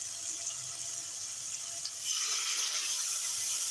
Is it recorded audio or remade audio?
recorded